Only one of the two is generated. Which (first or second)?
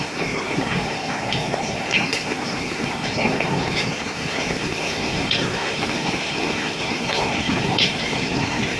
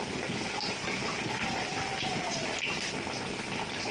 first